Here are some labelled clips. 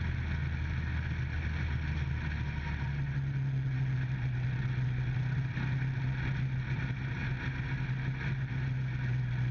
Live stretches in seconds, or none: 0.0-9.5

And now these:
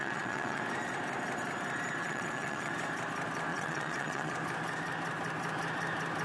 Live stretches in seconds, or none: 0.6-2.0; 2.7-3.5; 4.3-6.2